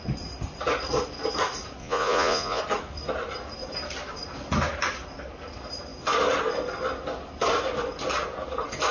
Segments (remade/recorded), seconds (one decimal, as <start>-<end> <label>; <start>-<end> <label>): 0.0-1.8 recorded; 1.8-2.6 remade; 2.6-8.9 recorded